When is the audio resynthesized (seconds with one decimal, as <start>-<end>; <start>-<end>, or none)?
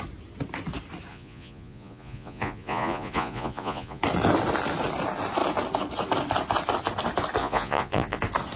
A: 1.1-4.0; 7.4-8.2